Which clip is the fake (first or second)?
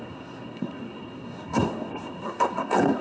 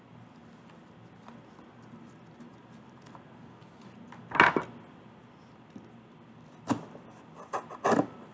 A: first